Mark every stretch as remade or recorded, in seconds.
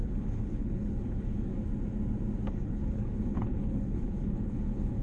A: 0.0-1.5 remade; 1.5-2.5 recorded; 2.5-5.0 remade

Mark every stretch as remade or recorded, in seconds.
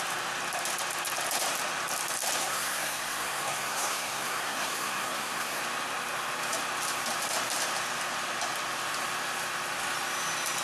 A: 0.0-2.4 recorded; 2.4-5.6 remade; 5.6-10.6 recorded